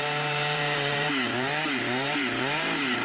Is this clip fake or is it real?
fake